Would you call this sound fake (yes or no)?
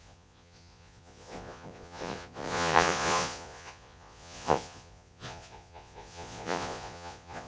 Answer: yes